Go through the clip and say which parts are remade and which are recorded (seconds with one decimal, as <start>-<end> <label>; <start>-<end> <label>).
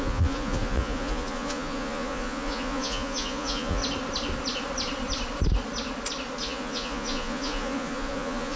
0.0-3.8 remade; 3.8-6.4 recorded; 6.4-8.6 remade